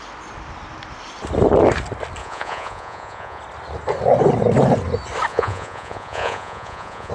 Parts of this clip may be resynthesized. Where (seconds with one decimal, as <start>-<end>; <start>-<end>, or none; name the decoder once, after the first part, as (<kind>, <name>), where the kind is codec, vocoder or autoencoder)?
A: 2.2-3.4 (vocoder, Vocos); 5.3-7.1